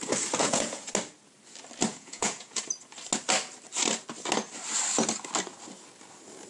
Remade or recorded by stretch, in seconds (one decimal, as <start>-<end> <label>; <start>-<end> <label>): 0.0-0.4 recorded; 0.4-0.9 remade; 0.9-1.9 recorded; 1.9-2.6 remade; 2.6-6.5 recorded